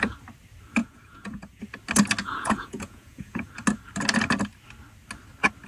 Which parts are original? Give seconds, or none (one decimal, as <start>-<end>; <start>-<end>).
0.0-0.8; 1.6-2.2; 3.5-5.7